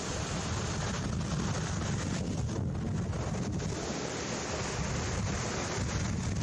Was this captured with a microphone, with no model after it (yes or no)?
yes